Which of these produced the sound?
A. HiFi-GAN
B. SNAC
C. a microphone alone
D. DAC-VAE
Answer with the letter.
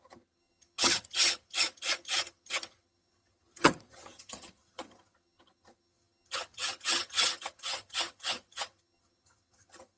A